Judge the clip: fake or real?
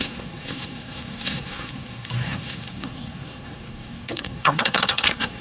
fake